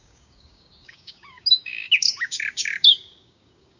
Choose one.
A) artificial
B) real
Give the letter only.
A